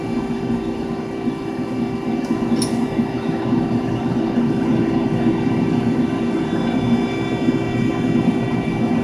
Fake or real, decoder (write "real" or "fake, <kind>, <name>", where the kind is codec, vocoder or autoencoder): real